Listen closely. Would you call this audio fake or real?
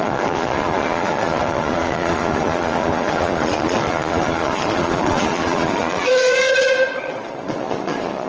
fake